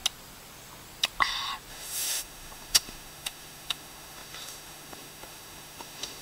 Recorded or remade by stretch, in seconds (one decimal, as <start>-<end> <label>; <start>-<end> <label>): 0.0-1.7 recorded; 1.7-6.2 remade